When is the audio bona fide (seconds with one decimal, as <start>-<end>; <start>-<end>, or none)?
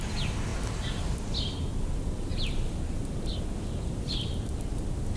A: 0.0-5.2